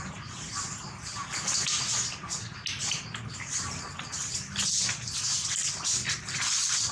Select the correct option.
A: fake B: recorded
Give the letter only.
B